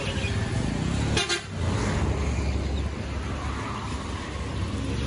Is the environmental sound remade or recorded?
recorded